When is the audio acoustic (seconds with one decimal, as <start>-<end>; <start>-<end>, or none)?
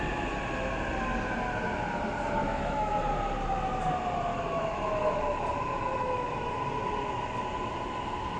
0.0-2.4; 3.0-4.3; 5.2-5.9; 6.6-8.4